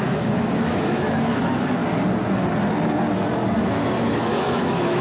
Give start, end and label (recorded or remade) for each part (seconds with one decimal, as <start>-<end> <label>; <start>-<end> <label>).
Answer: 0.0-1.8 remade; 1.8-4.0 recorded; 4.0-5.0 remade